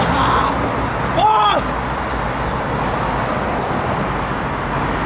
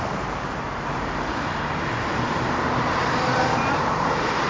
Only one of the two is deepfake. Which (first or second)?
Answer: second